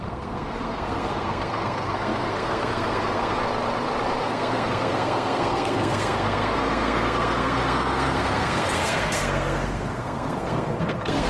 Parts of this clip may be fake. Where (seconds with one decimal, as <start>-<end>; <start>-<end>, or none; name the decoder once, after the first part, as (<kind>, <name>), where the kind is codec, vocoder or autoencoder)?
0.0-3.4 (codec, SNAC); 4.2-11.3